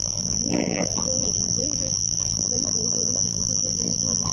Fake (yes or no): yes